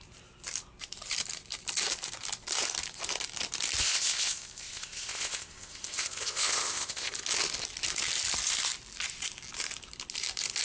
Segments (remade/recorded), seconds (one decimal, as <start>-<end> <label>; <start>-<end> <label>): 0.0-3.8 recorded; 3.8-7.1 remade; 7.1-10.6 recorded